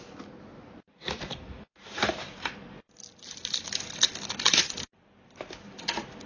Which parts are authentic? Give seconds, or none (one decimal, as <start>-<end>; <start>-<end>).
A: 0.0-6.3